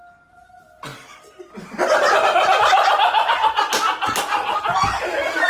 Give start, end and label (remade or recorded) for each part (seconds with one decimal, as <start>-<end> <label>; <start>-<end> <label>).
0.0-0.9 recorded; 0.9-4.2 remade; 4.2-5.5 recorded